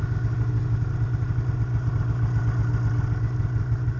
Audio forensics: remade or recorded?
recorded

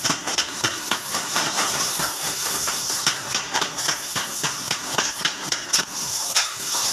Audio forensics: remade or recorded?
remade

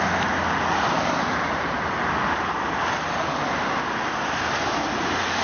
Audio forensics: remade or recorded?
recorded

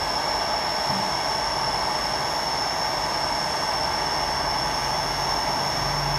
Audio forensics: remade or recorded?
recorded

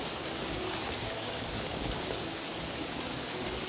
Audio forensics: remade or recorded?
remade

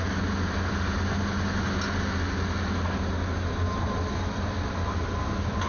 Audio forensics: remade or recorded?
recorded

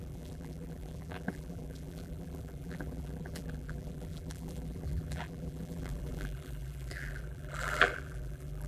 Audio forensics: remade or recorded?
remade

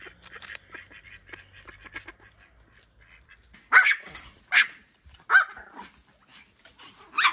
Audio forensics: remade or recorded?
recorded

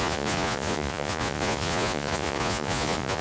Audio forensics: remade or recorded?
remade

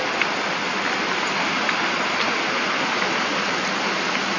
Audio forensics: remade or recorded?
recorded